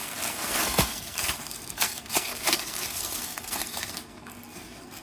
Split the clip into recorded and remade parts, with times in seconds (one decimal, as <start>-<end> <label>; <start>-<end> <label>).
0.0-5.0 remade